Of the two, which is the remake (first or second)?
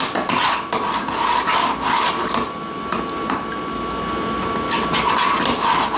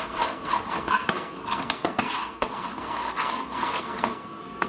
second